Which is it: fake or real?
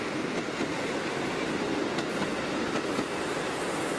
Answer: real